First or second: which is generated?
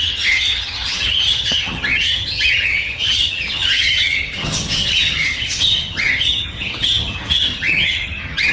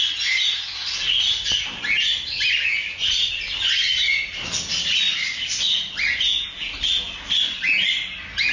first